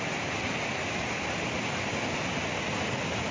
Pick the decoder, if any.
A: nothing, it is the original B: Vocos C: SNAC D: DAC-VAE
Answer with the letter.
A